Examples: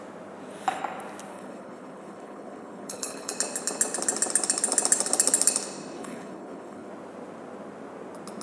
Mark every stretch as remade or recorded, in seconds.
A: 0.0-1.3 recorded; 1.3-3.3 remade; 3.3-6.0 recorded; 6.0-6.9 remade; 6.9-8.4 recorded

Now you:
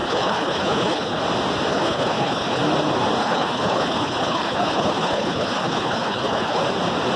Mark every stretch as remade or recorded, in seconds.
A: 0.0-1.2 remade; 1.2-1.7 recorded; 1.7-2.6 remade; 2.6-3.2 recorded; 3.2-6.6 remade; 6.6-7.2 recorded

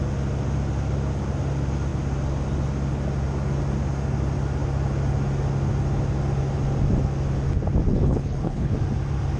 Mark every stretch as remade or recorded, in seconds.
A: 0.0-7.9 recorded; 7.9-8.7 remade; 8.7-9.4 recorded